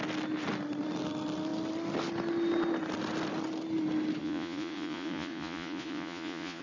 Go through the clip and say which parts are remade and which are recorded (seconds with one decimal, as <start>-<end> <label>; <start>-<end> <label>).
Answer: 0.0-4.2 recorded; 4.2-6.6 remade